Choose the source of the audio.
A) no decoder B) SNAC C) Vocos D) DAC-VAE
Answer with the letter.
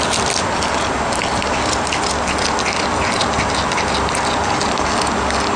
A